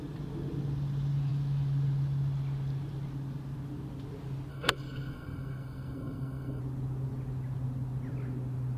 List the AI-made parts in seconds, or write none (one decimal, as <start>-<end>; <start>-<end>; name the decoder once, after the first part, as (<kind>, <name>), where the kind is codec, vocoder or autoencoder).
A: 4.5-6.6 (codec, SNAC)